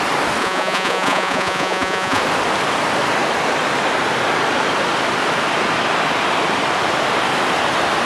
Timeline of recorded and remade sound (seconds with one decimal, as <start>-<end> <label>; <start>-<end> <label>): 0.0-0.4 recorded; 0.4-2.2 remade; 2.2-8.1 recorded